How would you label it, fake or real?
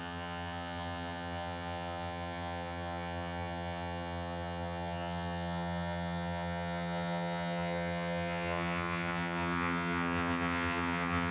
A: fake